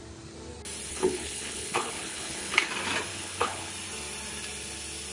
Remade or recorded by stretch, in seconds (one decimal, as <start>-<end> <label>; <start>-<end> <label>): 0.0-0.9 recorded; 0.9-2.7 remade; 2.7-3.1 recorded; 3.1-3.7 remade; 3.7-5.1 recorded

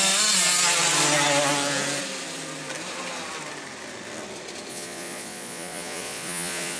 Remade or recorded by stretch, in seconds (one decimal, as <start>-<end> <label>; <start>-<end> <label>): 0.0-4.7 recorded; 4.7-6.8 remade

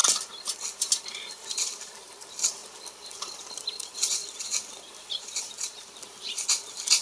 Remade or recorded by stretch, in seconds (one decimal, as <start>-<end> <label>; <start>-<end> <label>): 0.0-0.8 recorded; 0.8-2.6 remade; 2.6-3.5 recorded; 3.5-4.2 remade; 4.2-4.8 recorded; 4.8-7.0 remade

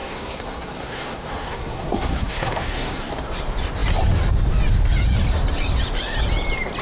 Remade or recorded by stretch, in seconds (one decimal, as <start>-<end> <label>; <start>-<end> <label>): 0.0-3.1 remade; 3.1-6.8 recorded

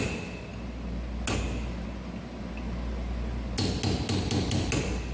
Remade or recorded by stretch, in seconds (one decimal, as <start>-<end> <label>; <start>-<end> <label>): 0.0-5.1 recorded

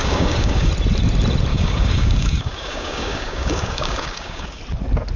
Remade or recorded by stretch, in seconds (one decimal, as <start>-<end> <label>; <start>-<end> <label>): 0.0-0.7 remade; 0.7-1.5 recorded; 1.5-4.6 remade; 4.6-5.2 recorded

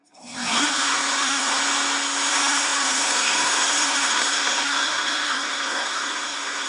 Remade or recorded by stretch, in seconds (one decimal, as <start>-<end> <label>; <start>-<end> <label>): 0.0-1.6 remade; 1.6-2.3 recorded; 2.3-6.7 remade

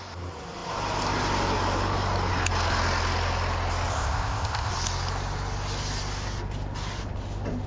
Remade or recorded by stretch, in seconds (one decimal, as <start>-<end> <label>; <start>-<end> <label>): 0.0-3.9 recorded; 3.9-4.7 remade; 4.7-7.7 recorded